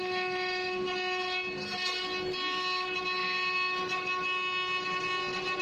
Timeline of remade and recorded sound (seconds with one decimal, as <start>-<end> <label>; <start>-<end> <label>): 0.0-5.6 recorded